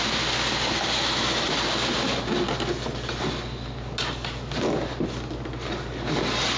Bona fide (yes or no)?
yes